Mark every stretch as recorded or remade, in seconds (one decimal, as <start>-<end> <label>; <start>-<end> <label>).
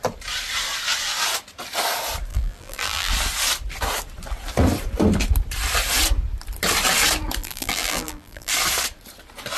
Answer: 0.0-2.3 recorded; 2.3-3.1 remade; 3.1-7.4 recorded; 7.4-8.5 remade; 8.5-9.6 recorded